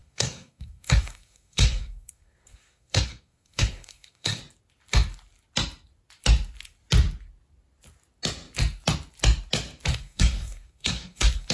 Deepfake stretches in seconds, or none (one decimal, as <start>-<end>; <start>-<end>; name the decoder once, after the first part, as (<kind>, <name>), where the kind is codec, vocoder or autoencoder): 0.0-4.4 (codec, SNAC); 9.9-11.5